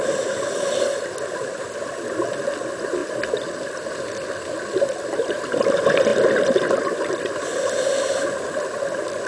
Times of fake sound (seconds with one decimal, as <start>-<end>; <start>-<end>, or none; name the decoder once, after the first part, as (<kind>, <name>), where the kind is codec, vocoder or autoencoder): none